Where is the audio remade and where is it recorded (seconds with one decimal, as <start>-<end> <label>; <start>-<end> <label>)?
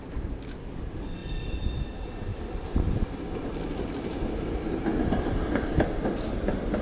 0.0-1.2 recorded; 1.2-1.8 remade; 1.8-4.9 recorded; 4.9-6.2 remade; 6.2-6.8 recorded